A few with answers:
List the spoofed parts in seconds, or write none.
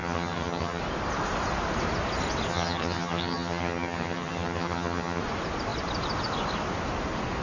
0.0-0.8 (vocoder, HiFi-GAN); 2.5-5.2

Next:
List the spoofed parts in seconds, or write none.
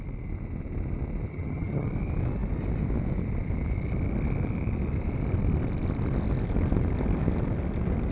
1.3-1.9 (vocoder, HiFi-GAN)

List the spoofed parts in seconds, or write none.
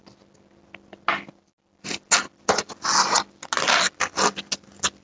none